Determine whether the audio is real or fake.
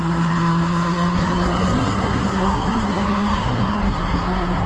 fake